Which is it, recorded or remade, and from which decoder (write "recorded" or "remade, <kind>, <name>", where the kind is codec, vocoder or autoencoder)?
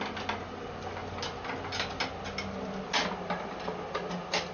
recorded